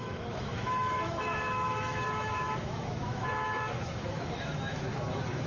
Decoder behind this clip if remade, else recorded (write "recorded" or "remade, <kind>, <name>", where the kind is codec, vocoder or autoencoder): remade, autoencoder, DAC-VAE